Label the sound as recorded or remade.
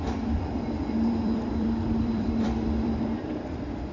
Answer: remade